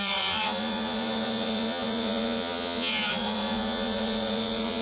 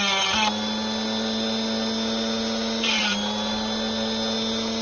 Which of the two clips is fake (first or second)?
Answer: first